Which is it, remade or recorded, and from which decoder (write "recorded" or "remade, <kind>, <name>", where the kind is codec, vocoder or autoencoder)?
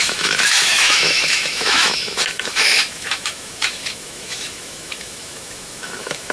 remade, autoencoder, DAC-VAE